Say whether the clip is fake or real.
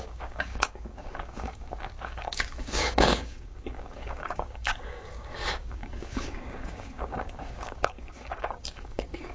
fake